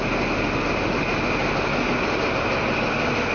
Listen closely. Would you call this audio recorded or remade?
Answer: recorded